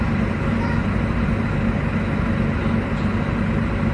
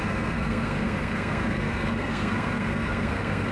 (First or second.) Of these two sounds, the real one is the first